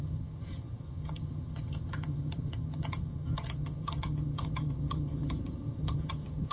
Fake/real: fake